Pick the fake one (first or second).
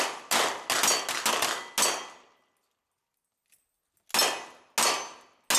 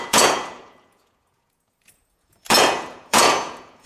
second